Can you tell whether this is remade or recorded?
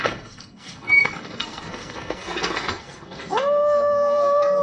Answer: remade